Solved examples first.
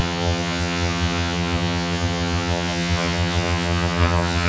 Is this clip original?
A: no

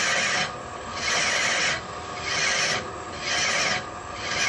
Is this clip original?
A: yes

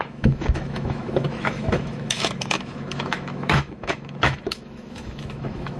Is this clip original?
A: no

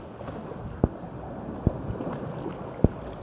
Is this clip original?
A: yes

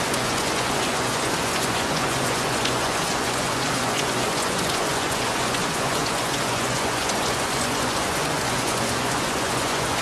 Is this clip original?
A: no